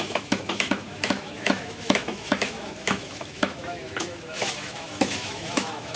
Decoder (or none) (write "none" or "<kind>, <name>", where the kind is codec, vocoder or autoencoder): autoencoder, DAC-VAE